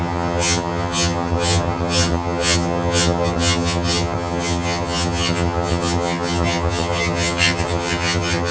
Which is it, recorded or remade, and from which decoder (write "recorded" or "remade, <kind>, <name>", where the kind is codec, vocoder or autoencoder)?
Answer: remade, vocoder, HiFi-GAN